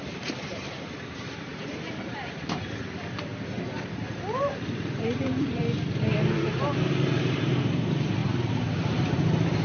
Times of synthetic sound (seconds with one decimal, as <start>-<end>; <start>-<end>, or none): 0.0-5.6; 7.1-9.6